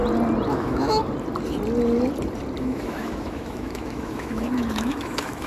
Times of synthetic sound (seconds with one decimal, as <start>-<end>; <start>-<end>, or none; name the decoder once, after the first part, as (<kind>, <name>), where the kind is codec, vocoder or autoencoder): 0.5-1.0 (autoencoder, DAC-VAE); 2.6-5.5